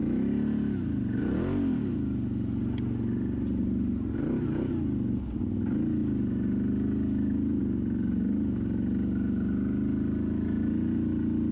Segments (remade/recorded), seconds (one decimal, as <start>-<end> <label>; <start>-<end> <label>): 0.0-11.5 recorded